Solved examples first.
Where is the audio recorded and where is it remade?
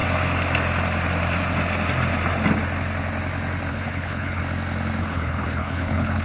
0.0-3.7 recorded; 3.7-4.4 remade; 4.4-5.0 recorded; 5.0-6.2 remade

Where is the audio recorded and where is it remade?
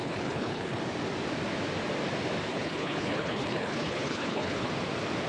0.0-0.8 remade; 0.8-2.5 recorded; 2.5-4.7 remade; 4.7-5.3 recorded